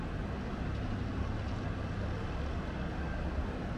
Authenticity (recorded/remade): recorded